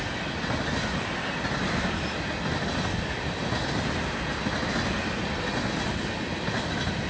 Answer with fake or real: real